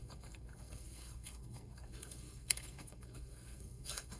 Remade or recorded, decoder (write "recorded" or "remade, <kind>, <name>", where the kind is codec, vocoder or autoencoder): remade, codec, SNAC